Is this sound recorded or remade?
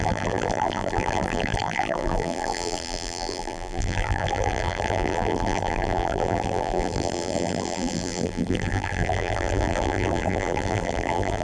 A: remade